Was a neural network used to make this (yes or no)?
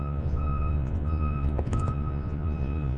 yes